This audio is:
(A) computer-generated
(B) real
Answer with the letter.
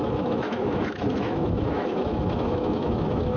A